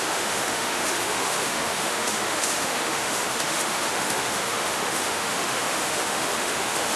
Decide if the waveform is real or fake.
fake